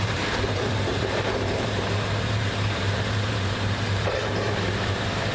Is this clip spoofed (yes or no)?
yes